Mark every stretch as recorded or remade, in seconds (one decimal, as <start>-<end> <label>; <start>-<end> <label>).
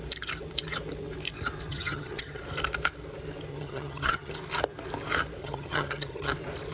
0.0-1.7 recorded; 1.7-2.4 remade; 2.4-3.5 recorded; 3.5-4.3 remade; 4.3-5.4 recorded; 5.4-6.3 remade; 6.3-6.7 recorded